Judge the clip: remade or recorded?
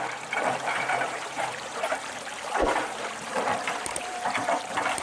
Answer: remade